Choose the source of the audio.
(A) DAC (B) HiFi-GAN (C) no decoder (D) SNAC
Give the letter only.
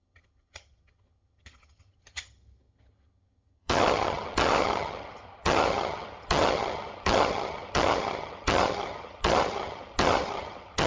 B